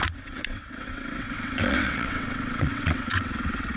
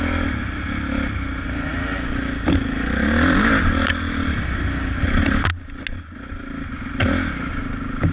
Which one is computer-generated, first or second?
first